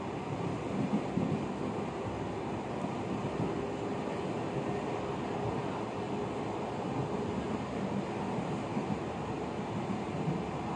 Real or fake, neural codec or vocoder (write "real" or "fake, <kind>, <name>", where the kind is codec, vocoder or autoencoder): real